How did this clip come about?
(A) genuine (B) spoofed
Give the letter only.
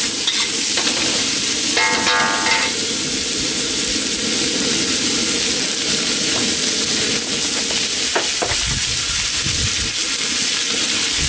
A